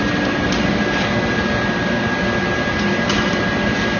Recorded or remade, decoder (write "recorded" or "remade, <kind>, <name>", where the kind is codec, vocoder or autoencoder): recorded